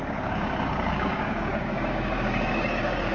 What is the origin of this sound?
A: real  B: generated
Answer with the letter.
B